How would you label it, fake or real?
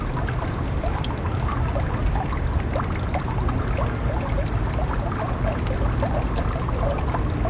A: fake